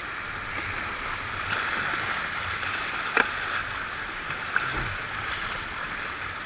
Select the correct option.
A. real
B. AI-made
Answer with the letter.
A